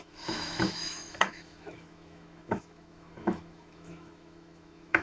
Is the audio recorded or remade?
remade